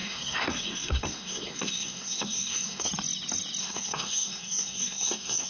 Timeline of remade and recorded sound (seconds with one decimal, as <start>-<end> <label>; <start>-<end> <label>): 0.0-2.9 remade; 2.9-3.6 recorded; 3.6-5.5 remade